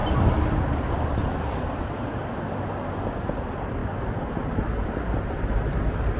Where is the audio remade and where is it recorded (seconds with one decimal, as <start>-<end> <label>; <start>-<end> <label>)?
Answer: 0.0-6.2 recorded